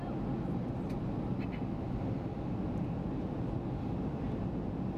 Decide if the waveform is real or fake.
real